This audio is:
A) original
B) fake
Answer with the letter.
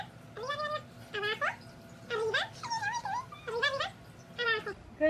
A